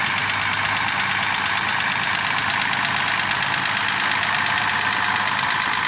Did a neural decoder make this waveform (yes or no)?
no